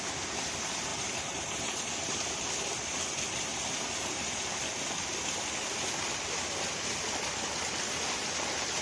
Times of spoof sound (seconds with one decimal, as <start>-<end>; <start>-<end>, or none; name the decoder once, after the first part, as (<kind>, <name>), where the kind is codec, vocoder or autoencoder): 0.9-1.9 (vocoder, BigVGAN v2); 3.5-4.5